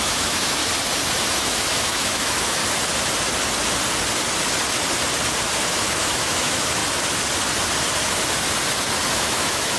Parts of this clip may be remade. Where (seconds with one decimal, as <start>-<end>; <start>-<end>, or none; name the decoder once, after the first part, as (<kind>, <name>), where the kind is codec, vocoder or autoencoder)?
0.0-0.6 (autoencoder, DAC-VAE); 1.2-2.6; 5.6-6.8; 9.1-9.8